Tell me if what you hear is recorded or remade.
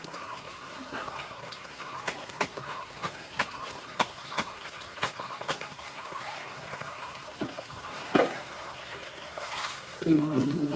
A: remade